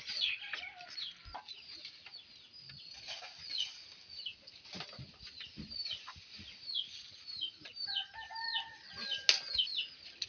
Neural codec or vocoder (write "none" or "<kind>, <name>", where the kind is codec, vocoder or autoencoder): none